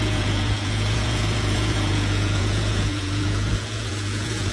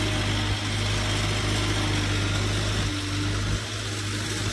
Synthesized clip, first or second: first